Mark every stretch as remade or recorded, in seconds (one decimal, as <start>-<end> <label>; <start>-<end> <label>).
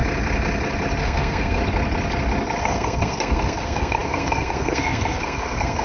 0.0-1.0 recorded; 1.0-1.6 remade; 1.6-2.6 recorded; 2.6-5.8 remade